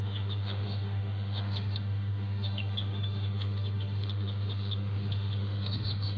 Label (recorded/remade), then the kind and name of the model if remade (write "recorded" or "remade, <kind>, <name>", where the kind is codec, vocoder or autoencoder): remade, autoencoder, DAC-VAE